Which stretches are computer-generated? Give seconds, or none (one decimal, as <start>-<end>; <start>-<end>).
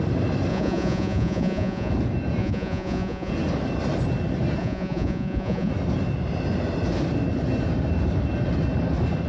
0.5-1.9; 2.4-3.3; 4.6-5.7